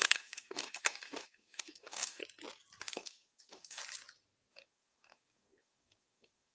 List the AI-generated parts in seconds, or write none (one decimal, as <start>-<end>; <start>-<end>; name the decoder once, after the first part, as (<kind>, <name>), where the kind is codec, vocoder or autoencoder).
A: 0.0-2.2 (codec, DAC); 2.8-3.8; 4.5-6.5